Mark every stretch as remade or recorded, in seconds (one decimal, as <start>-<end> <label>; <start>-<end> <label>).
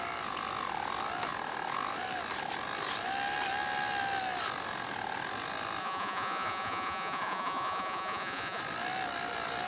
0.0-5.8 recorded; 5.8-8.6 remade; 8.6-9.7 recorded